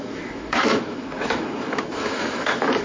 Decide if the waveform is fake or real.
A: fake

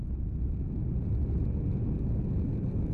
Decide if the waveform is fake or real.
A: real